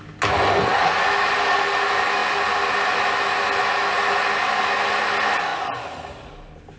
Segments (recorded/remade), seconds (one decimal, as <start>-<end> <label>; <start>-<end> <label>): 0.0-6.8 recorded